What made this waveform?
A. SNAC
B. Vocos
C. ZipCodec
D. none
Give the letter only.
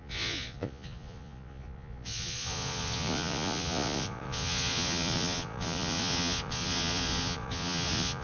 B